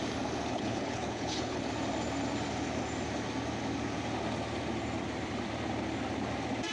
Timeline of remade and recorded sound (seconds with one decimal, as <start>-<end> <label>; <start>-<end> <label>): 0.0-0.5 recorded; 0.5-1.6 remade; 1.6-6.7 recorded